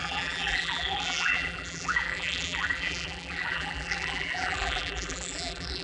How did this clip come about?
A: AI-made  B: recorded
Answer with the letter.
A